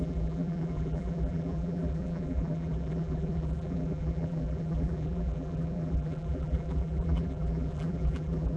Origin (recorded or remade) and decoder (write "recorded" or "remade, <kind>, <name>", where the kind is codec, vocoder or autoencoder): remade, vocoder, BigVGAN v2